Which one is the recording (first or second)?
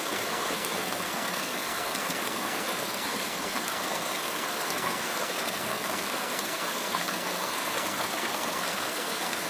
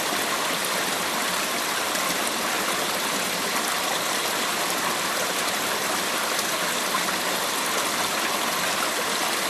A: second